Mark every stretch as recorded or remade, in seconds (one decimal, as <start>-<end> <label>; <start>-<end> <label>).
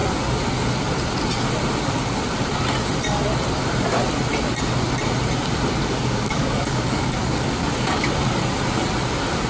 0.0-5.8 recorded; 5.8-8.1 remade; 8.1-9.5 recorded